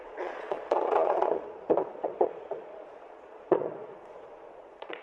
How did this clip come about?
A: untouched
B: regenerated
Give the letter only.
B